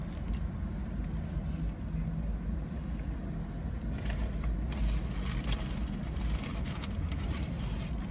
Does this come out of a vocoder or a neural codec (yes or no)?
no